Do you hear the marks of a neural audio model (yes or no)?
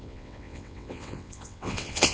yes